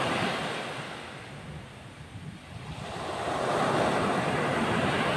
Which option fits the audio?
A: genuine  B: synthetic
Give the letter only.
A